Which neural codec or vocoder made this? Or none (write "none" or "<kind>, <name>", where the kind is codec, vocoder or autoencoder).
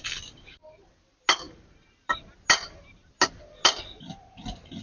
none